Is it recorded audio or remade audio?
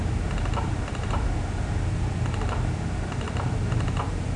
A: remade